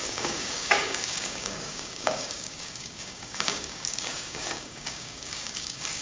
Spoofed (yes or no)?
yes